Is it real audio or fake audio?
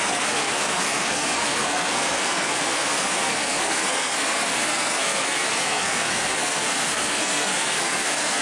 fake